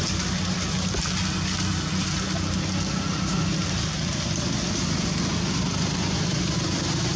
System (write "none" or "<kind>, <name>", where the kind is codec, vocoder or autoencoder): none